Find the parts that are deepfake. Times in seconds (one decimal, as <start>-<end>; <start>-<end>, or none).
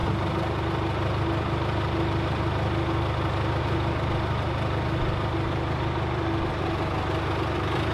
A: none